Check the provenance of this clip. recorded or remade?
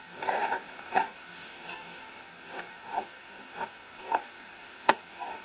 remade